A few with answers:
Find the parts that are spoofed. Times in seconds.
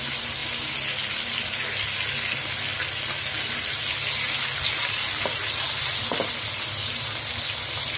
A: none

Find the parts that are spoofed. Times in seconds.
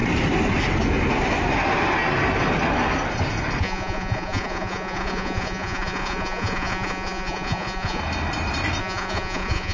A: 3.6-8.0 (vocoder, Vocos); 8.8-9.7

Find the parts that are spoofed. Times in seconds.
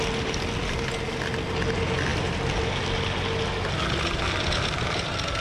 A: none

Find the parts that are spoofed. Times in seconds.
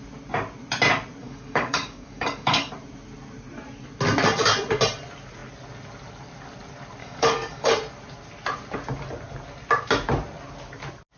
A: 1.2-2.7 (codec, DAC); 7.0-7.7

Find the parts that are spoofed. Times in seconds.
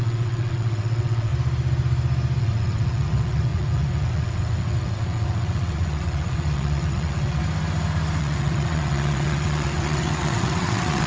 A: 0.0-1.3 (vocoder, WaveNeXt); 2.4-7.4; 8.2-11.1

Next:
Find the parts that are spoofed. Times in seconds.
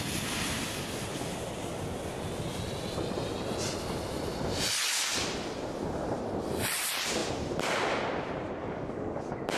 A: 8.6-9.2 (codec, DAC)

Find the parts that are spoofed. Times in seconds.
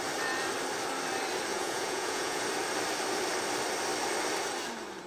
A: 1.5-2.4 (vocoder, Vocos)